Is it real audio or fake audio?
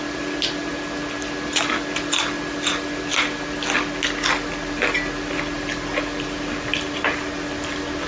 real